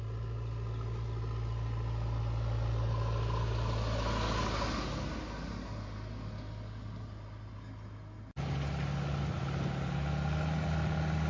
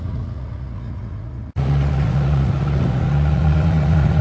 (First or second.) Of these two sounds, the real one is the first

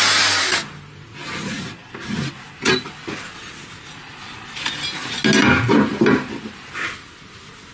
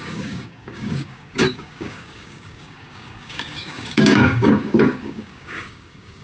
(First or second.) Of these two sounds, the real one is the first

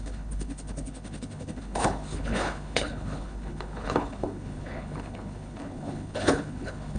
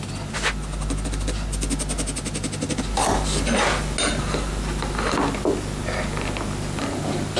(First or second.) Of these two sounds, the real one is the second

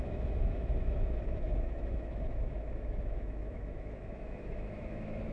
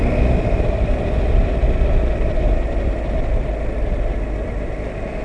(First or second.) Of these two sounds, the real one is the second